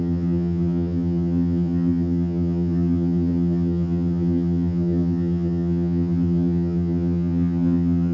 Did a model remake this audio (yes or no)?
yes